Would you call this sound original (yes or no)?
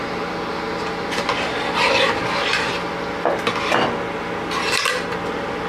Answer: yes